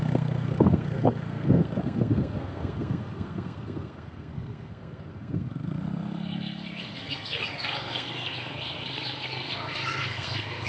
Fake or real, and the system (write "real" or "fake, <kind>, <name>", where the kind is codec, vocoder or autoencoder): fake, codec, SNAC